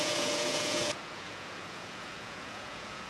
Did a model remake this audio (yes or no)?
yes